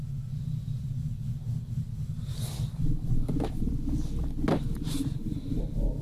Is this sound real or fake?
real